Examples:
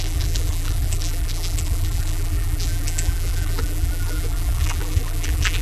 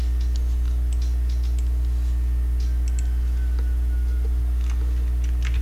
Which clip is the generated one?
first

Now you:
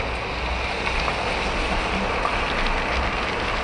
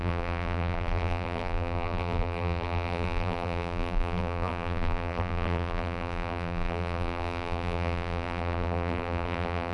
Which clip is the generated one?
second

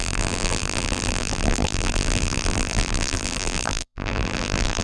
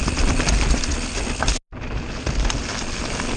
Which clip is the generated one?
first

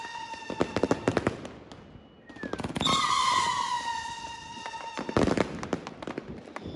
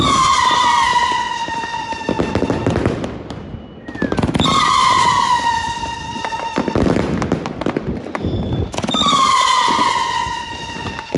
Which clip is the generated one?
second